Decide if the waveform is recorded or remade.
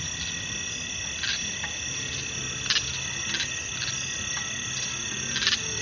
recorded